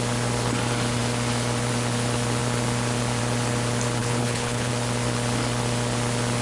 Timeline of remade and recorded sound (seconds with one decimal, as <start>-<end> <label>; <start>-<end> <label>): 0.0-4.0 recorded; 4.0-4.7 remade; 4.7-6.4 recorded